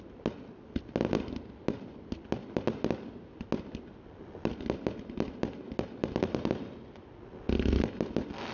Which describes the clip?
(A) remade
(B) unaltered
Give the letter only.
B